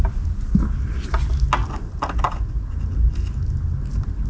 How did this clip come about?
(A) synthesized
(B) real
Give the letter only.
B